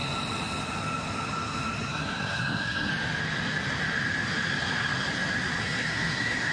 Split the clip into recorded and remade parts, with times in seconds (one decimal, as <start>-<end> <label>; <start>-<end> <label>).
0.0-1.9 recorded; 1.9-2.9 remade; 2.9-5.6 recorded; 5.6-6.5 remade